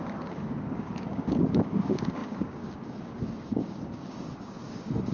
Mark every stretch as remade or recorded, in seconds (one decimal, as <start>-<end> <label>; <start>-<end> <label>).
0.0-5.1 remade